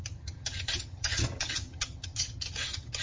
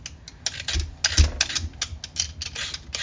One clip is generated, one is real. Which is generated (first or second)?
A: first